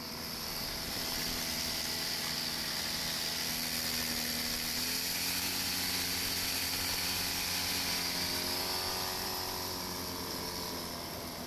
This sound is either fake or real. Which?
real